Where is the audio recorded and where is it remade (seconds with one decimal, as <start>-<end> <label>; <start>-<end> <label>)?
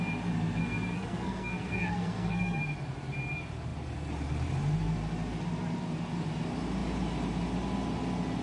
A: 0.0-0.6 recorded; 0.6-2.6 remade; 2.6-8.4 recorded